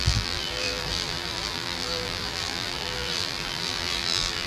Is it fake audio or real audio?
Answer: fake